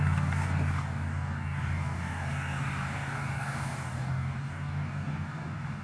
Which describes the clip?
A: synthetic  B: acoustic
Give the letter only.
A